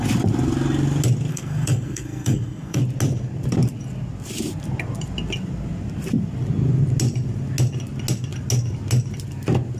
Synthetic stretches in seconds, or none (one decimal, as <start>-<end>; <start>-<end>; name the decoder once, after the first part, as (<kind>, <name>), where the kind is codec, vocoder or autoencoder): 1.3-2.8 (codec, SNAC)